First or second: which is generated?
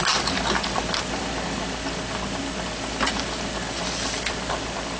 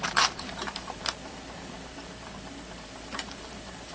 second